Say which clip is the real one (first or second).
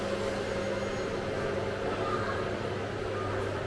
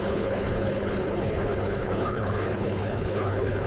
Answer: first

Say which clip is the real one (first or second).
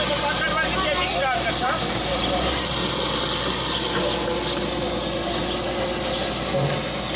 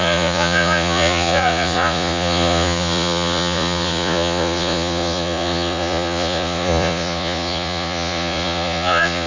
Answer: first